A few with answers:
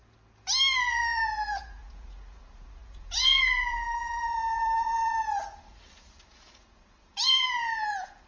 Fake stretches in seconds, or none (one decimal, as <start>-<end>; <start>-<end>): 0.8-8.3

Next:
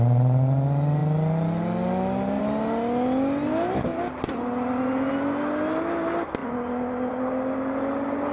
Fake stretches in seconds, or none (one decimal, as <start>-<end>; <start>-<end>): none

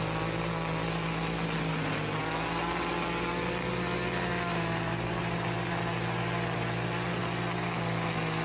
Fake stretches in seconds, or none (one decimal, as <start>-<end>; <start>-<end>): none

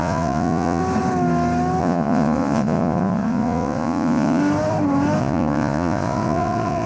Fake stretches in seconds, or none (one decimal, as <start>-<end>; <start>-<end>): 0.0-0.8; 1.8-4.4; 5.2-6.9